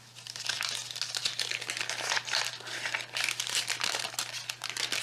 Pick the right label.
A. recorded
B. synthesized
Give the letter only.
A